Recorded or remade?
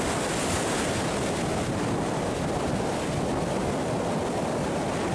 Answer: recorded